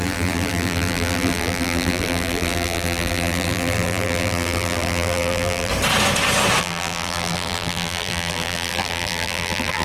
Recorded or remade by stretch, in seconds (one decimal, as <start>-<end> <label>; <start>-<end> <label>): 0.0-5.7 remade; 5.7-6.6 recorded; 6.6-9.8 remade